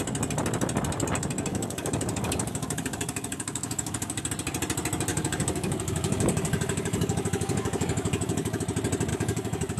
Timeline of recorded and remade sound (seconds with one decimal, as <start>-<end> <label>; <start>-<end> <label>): 0.0-1.5 recorded; 1.5-4.3 remade; 4.3-5.1 recorded; 5.1-8.6 remade; 8.6-9.1 recorded; 9.1-9.8 remade

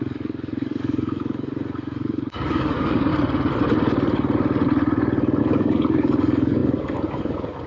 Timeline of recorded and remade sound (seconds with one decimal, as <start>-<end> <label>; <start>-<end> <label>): 0.0-3.1 remade; 3.1-5.4 recorded; 5.4-7.7 remade

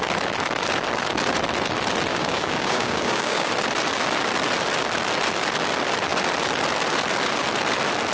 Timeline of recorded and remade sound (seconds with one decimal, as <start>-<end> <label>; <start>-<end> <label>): 0.0-2.1 recorded; 2.1-3.5 remade; 3.5-8.1 recorded

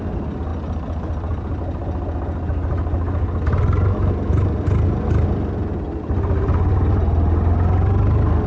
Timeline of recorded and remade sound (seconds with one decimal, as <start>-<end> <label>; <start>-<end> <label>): 0.0-8.5 recorded

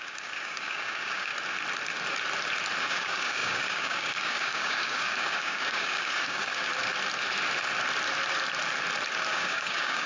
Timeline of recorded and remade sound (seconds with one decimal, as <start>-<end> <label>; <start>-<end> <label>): 0.0-1.3 remade; 1.3-2.8 recorded; 2.8-6.7 remade; 6.7-9.3 recorded; 9.3-10.1 remade

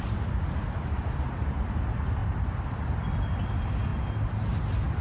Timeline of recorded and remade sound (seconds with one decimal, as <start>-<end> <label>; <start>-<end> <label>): 0.0-5.0 recorded

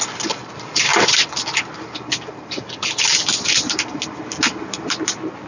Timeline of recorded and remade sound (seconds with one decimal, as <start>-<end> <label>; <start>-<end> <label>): 0.0-5.5 recorded

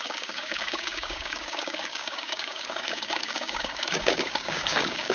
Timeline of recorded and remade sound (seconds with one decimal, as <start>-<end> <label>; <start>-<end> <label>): 0.0-5.1 remade